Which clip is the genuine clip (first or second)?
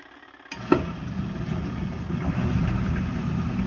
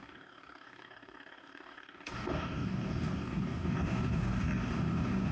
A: first